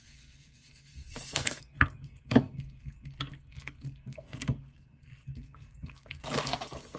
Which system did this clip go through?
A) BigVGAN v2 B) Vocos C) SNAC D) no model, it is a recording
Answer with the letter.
C